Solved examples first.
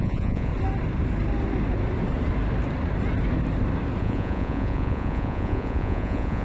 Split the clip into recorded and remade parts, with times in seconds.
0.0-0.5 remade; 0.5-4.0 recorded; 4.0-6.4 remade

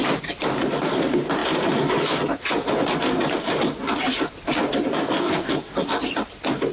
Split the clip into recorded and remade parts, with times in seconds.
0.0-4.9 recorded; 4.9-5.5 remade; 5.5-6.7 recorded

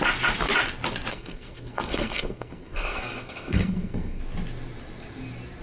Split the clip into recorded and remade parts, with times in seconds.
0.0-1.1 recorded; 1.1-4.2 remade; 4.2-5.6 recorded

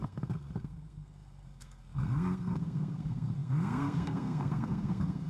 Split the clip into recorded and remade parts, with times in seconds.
0.0-5.3 remade

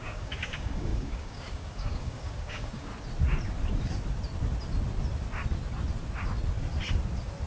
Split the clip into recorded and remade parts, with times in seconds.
0.0-2.9 remade; 2.9-7.5 recorded

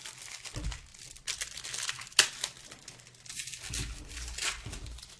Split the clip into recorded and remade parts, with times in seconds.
0.0-5.2 recorded

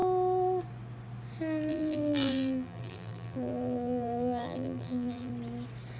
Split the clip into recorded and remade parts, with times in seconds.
0.0-1.7 recorded; 1.7-5.3 remade; 5.3-6.0 recorded